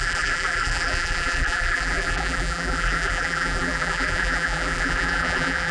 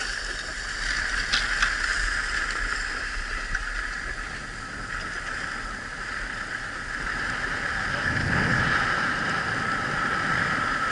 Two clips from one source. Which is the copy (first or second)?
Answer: first